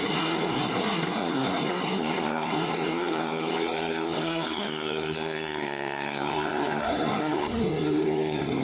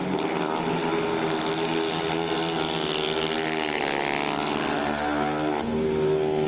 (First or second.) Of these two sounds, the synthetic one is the first